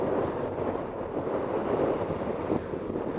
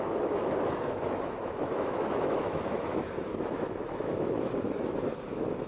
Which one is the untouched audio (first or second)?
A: first